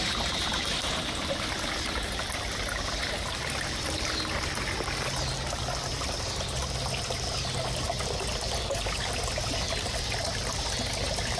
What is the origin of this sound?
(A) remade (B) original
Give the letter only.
B